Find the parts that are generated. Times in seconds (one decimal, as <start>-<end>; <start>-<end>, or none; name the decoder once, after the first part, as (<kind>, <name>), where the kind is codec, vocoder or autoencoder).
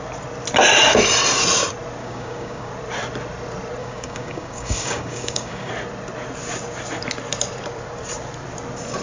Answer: 2.0-2.7 (codec, DAC); 3.8-5.7